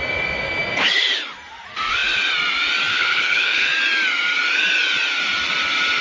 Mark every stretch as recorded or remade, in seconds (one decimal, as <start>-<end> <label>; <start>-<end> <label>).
0.0-2.9 recorded; 2.9-3.7 remade; 3.7-6.0 recorded